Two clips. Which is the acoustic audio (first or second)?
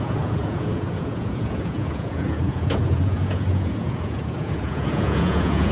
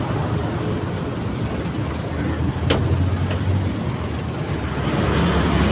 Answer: second